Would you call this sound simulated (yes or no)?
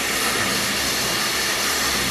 no